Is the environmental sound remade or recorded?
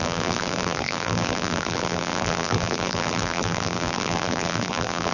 remade